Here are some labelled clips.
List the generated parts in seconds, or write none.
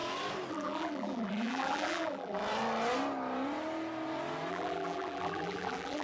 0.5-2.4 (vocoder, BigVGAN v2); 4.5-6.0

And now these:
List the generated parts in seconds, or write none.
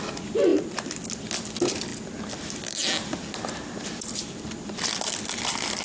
none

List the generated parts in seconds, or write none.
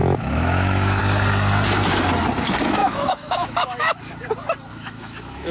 0.0-1.0 (autoencoder, DAC-VAE); 2.8-4.0; 4.7-5.5